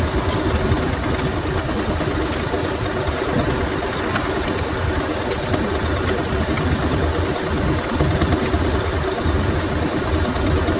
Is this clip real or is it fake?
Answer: real